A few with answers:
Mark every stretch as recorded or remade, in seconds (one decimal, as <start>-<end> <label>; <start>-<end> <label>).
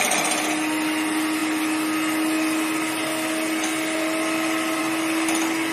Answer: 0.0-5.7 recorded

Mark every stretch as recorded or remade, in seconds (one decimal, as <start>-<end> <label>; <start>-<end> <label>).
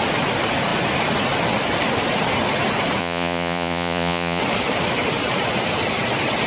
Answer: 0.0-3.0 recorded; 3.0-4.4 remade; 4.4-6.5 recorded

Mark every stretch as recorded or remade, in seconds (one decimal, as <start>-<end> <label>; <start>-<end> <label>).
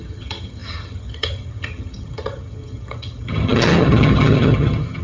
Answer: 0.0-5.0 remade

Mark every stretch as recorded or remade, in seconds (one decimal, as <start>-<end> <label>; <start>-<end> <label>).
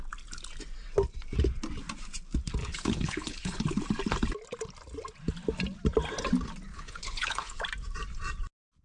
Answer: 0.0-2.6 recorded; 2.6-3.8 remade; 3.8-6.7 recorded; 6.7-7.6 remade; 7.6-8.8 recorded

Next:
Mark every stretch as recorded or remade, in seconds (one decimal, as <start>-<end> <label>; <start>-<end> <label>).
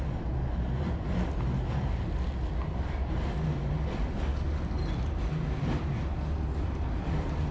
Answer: 0.0-7.5 recorded